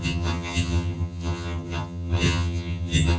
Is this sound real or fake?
fake